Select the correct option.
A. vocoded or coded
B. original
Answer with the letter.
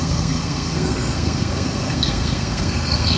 A